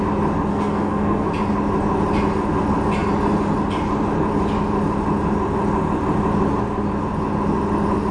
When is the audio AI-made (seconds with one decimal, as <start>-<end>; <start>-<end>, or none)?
0.5-1.3